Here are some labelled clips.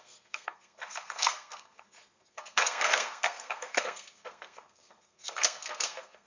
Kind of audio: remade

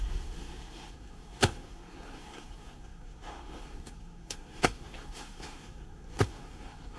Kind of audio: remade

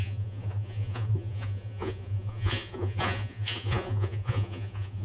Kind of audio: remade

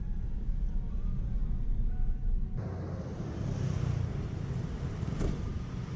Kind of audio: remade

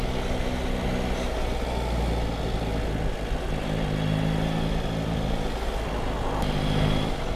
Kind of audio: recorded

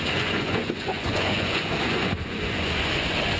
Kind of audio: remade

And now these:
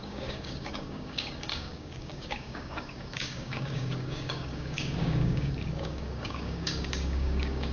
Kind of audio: remade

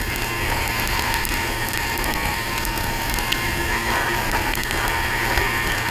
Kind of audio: remade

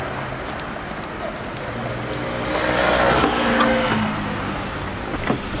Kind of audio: recorded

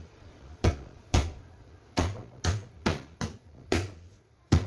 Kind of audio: remade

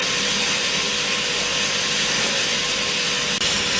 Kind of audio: recorded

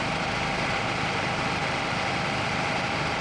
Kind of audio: recorded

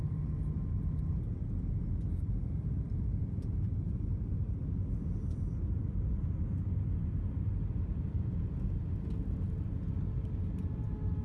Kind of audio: recorded